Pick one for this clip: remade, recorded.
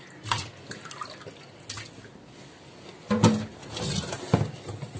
recorded